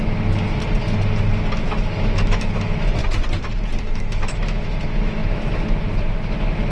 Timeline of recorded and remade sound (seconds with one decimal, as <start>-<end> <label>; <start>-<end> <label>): 0.0-0.6 remade; 0.6-1.6 recorded; 1.6-3.0 remade; 3.0-3.8 recorded; 3.8-6.7 remade